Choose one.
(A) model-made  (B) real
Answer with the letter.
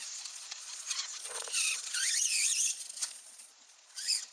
A